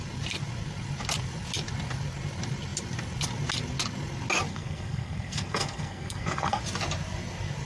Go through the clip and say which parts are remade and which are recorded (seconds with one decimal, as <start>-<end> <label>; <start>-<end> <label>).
0.0-4.5 recorded; 4.5-6.6 remade; 6.6-7.7 recorded